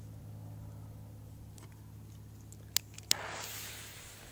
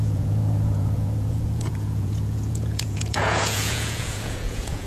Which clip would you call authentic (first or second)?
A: first